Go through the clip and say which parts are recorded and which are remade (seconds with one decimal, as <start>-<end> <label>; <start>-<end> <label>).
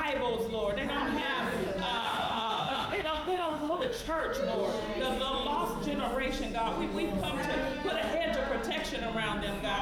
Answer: 0.0-2.0 recorded; 2.0-4.2 remade; 4.2-9.8 recorded